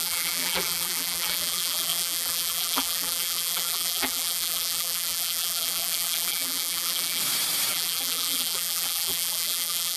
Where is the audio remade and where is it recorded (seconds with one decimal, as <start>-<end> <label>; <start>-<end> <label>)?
0.0-7.2 remade; 7.2-7.7 recorded; 7.7-10.0 remade